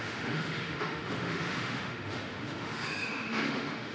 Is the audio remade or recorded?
remade